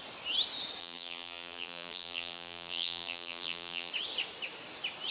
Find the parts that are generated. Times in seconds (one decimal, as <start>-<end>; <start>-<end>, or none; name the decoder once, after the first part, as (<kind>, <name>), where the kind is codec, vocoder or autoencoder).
0.8-3.9 (vocoder, BigVGAN v2)